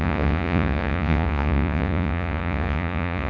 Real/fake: fake